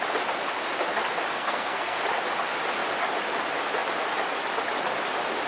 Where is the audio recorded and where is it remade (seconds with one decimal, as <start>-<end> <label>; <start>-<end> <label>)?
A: 0.0-1.3 recorded; 1.3-2.0 remade; 2.0-5.5 recorded